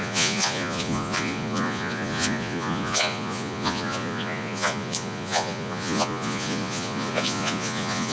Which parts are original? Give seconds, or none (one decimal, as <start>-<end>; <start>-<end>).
none

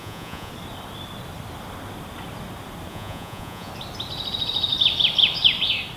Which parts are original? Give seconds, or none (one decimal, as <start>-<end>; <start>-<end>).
0.5-2.9; 3.7-6.0

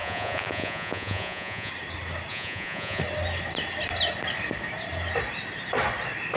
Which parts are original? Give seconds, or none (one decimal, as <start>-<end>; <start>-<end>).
1.7-2.3; 3.0-6.4

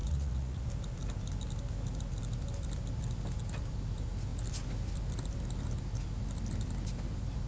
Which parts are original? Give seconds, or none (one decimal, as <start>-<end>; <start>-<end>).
0.6-7.5

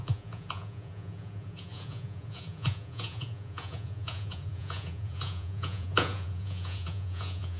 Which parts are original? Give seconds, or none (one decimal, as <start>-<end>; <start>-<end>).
none